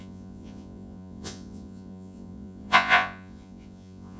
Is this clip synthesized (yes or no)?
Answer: yes